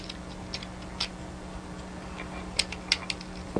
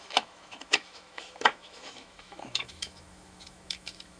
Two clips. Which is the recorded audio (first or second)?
first